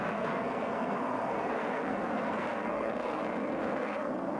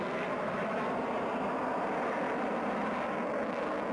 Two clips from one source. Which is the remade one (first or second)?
first